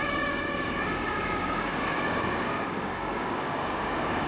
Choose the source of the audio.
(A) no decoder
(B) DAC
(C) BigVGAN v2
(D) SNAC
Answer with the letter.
B